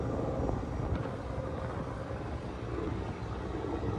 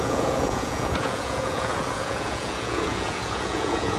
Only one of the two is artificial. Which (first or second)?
second